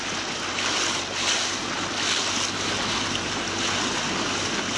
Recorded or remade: recorded